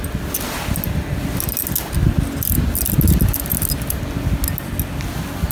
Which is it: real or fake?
real